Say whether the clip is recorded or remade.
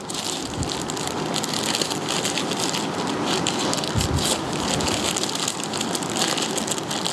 recorded